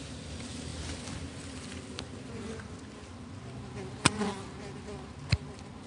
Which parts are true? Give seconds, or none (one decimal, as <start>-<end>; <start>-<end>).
0.0-5.9